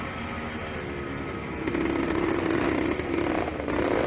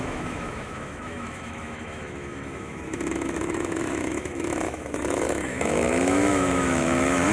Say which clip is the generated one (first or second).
second